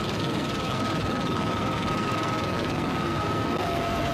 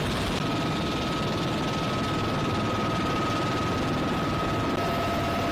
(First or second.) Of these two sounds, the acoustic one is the second